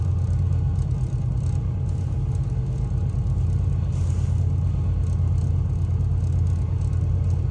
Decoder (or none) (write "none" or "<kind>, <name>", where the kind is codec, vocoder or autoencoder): none